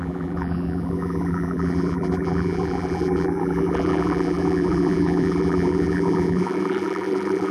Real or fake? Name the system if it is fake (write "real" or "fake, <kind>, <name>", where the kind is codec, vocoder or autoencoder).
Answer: fake, vocoder, BigVGAN v2